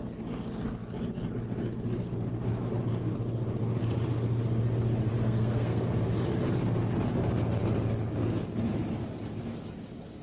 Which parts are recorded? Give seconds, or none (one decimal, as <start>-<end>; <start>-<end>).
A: 0.0-5.1; 5.9-10.2